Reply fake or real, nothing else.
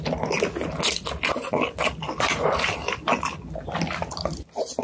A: real